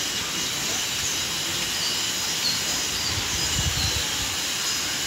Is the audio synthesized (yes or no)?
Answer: no